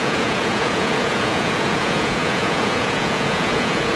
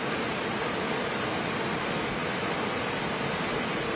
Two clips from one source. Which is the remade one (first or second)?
first